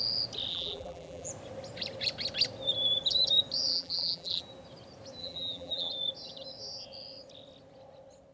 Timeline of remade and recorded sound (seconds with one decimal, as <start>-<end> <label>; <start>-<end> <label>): 0.0-0.5 recorded; 0.5-1.3 remade; 1.3-3.7 recorded; 3.7-4.4 remade; 4.4-5.2 recorded; 5.2-5.9 remade; 5.9-8.3 recorded